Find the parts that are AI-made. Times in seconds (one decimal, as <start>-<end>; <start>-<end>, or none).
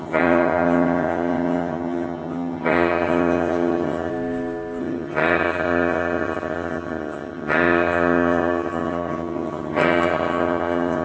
0.0-4.1; 4.8-11.0